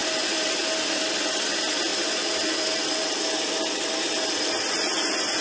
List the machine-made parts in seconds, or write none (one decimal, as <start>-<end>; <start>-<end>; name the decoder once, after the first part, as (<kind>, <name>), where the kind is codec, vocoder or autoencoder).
0.0-0.6 (vocoder, BigVGAN v2); 1.9-5.4